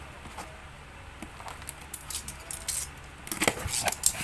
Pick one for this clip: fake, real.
real